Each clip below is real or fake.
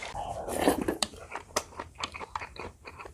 fake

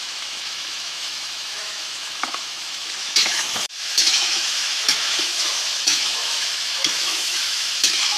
fake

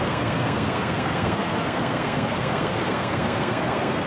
fake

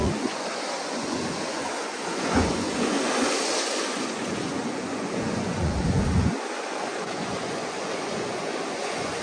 fake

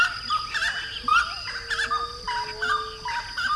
real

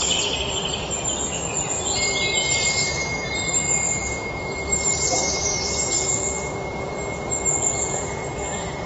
real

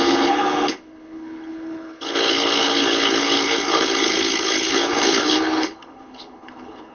fake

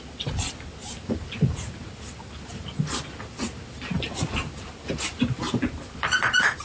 real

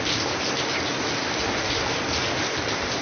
real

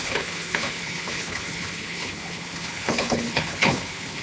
fake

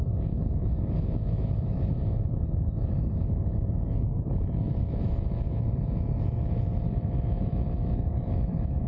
fake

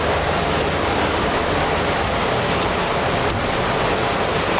real